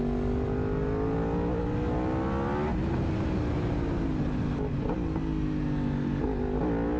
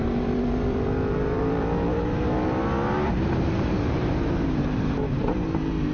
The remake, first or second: second